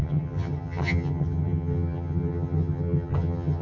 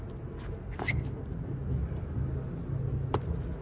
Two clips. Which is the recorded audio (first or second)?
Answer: second